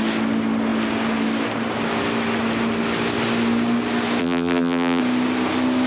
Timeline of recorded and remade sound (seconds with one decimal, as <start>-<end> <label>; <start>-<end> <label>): 0.0-4.2 recorded; 4.2-5.0 remade; 5.0-5.9 recorded